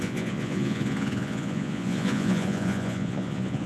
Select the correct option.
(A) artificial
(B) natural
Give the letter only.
A